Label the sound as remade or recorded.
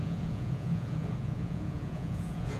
remade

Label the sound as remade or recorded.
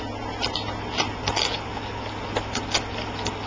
recorded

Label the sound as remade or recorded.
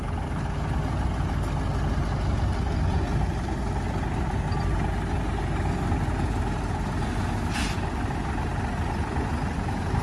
recorded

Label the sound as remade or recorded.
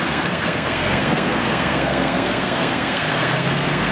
remade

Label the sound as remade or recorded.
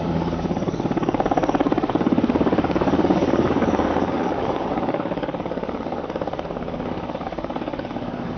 remade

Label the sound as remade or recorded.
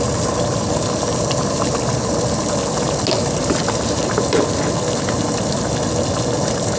recorded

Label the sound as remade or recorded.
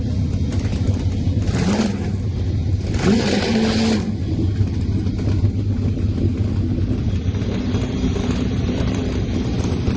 recorded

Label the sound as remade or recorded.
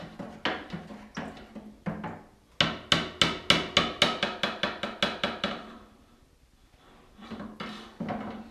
recorded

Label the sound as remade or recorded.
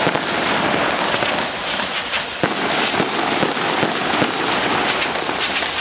recorded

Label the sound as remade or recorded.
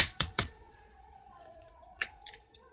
remade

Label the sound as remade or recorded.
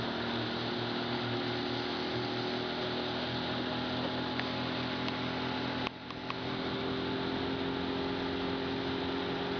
recorded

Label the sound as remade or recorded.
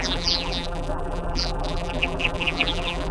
remade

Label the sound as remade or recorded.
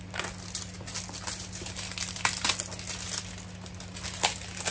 recorded